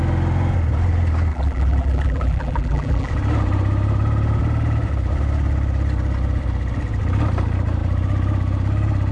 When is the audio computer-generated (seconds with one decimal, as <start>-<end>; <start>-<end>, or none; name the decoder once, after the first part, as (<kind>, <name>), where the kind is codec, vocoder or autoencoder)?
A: 1.3-3.1 (vocoder, BigVGAN v2)